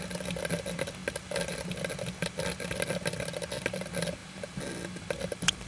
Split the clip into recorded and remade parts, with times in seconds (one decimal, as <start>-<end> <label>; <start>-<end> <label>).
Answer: 0.0-5.7 recorded